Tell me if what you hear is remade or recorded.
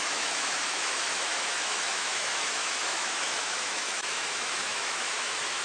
remade